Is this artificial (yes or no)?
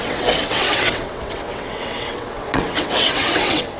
yes